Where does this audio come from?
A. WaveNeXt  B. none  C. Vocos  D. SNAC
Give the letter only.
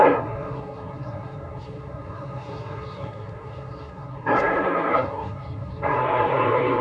D